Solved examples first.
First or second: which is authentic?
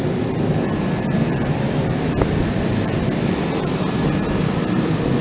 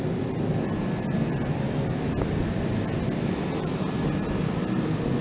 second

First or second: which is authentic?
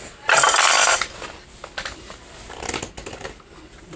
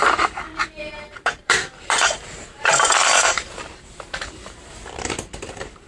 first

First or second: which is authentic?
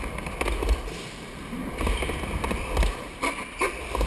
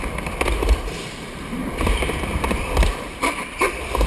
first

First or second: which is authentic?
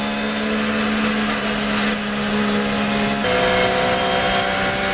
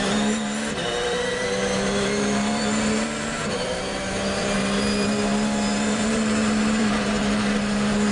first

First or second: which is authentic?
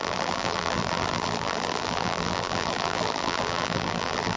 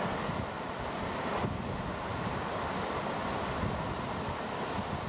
second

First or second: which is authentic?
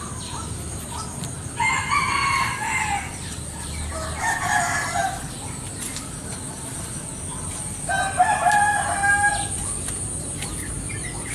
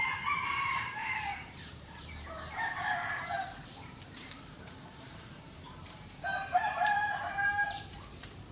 first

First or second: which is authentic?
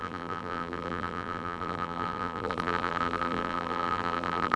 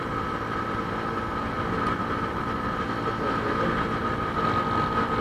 second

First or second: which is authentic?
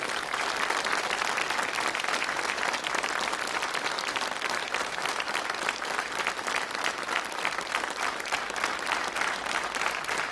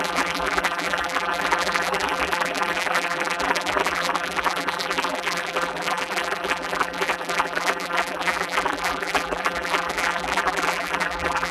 first